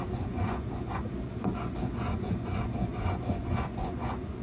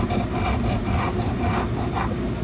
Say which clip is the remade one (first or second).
first